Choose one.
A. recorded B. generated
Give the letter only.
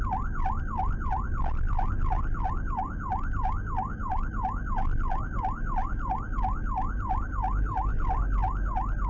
A